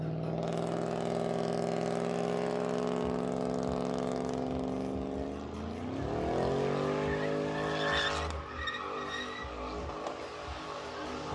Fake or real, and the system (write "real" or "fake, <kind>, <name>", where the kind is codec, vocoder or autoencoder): real